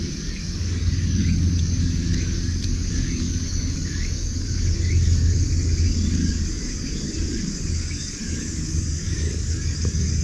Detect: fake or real fake